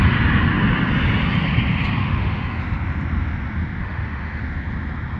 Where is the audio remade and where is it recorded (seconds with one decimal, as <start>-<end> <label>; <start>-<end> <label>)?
0.0-2.0 recorded; 2.0-2.6 remade; 2.6-3.8 recorded; 3.8-4.4 remade; 4.4-5.2 recorded